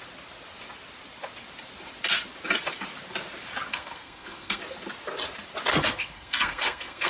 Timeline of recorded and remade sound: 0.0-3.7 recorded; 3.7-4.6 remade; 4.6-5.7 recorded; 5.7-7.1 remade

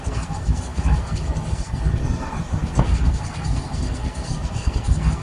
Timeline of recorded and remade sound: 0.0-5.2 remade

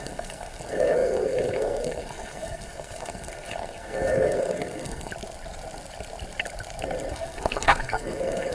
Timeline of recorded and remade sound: 0.0-5.1 remade; 5.1-7.1 recorded; 7.1-8.5 remade

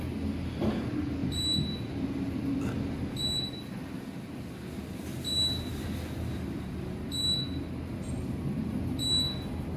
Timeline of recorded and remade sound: 0.0-9.8 recorded